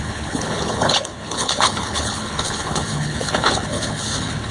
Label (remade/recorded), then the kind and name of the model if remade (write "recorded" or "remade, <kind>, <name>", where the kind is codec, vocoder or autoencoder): remade, codec, HILCodec